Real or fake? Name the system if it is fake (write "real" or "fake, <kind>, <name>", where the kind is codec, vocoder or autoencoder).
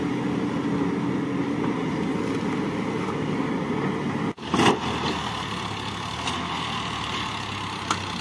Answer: real